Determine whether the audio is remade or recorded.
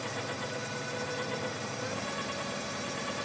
remade